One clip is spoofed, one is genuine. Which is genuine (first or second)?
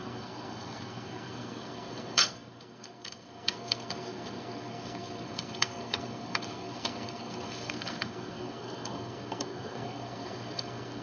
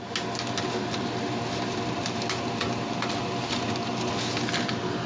second